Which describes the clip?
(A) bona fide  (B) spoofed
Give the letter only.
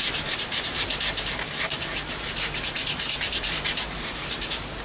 B